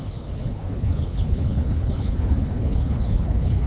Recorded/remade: remade